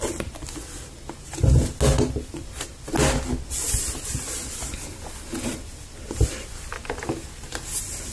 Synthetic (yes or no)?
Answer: no